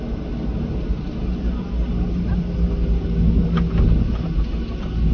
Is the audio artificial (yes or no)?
no